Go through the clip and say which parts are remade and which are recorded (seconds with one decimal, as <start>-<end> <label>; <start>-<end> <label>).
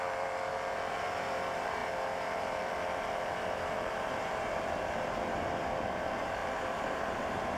0.0-7.6 remade